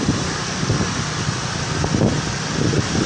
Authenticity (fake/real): fake